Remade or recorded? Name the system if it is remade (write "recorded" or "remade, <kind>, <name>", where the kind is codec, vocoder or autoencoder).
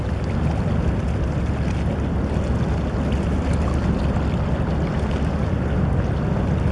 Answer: recorded